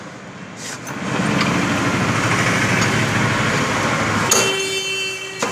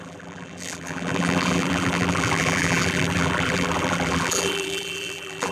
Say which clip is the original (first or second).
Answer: first